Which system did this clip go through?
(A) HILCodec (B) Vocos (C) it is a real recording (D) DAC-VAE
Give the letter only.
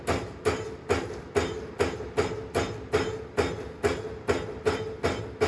C